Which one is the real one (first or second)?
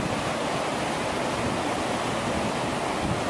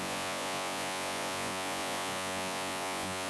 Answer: first